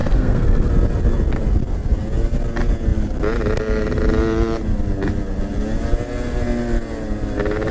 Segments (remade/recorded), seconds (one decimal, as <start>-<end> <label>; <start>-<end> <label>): 0.0-0.7 remade; 0.7-7.7 recorded